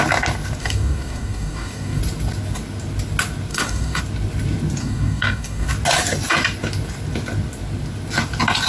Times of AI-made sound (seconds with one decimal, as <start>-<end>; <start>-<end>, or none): 0.6-2.0; 3.5-4.0; 4.8-5.7